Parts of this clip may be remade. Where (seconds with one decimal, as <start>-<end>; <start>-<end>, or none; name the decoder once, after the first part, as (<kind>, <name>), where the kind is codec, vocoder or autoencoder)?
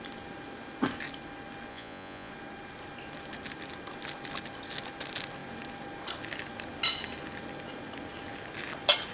1.7-2.3 (vocoder, Vocos)